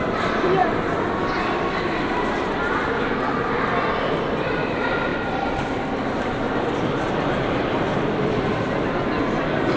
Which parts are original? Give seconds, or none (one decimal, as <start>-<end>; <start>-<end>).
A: 0.0-9.8